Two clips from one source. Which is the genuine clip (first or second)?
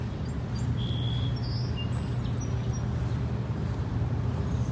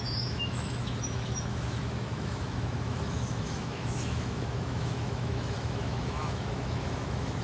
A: first